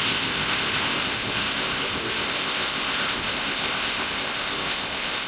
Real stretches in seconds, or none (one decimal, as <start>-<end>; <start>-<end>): none